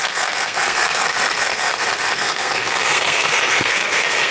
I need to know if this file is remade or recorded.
remade